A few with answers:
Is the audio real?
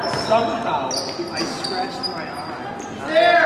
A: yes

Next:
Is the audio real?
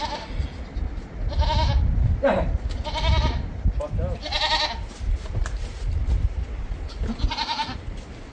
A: yes